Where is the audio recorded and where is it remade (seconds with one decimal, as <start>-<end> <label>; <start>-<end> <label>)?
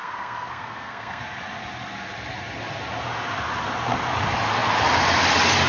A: 0.0-1.2 remade; 1.2-5.7 recorded